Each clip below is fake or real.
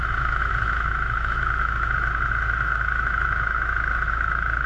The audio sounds fake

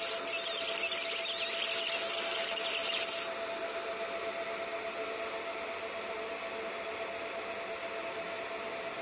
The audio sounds real